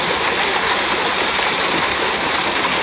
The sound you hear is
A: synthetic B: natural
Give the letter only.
B